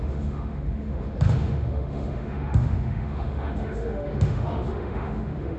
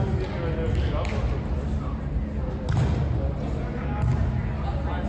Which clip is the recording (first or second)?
second